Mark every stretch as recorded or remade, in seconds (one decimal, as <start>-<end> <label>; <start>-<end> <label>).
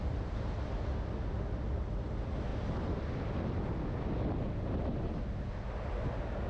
0.0-6.5 recorded